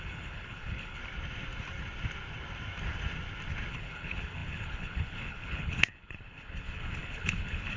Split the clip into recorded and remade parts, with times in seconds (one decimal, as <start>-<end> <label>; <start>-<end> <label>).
0.0-1.0 remade; 1.0-3.7 recorded; 3.7-7.8 remade